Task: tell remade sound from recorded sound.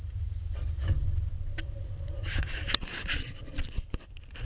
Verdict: remade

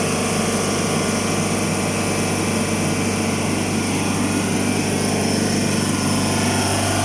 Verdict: recorded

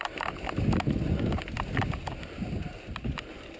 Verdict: recorded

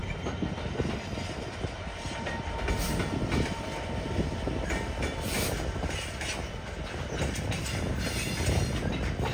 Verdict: recorded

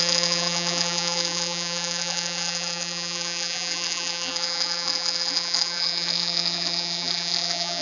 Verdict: remade